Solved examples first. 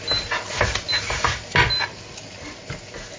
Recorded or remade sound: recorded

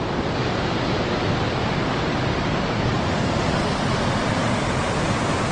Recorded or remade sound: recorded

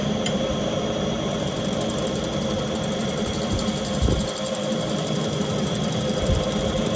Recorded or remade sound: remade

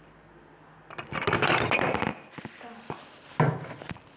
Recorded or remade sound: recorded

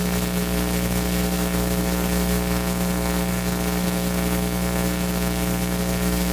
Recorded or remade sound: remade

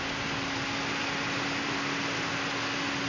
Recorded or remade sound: recorded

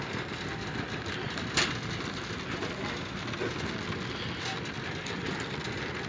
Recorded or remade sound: recorded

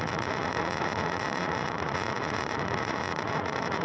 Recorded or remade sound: remade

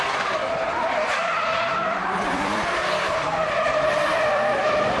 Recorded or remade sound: remade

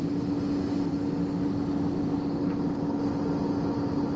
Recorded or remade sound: recorded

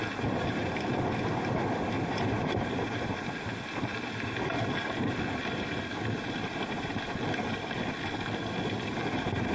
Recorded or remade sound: recorded